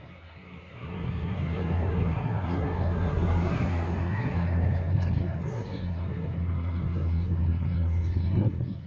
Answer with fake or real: fake